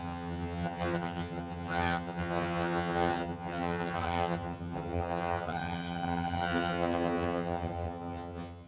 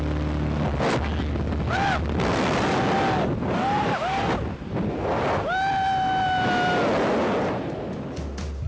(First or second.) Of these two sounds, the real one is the second